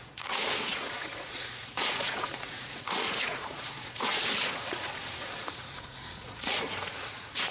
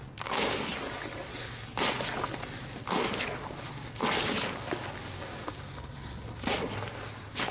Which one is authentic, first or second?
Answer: second